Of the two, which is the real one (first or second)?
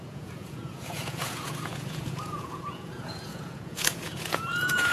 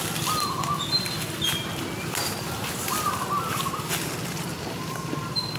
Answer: second